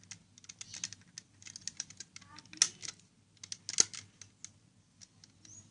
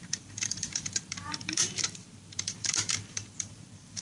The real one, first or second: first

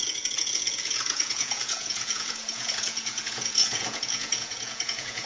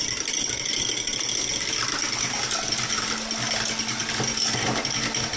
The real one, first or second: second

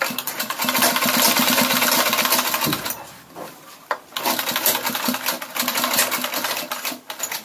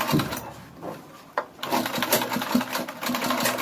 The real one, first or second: first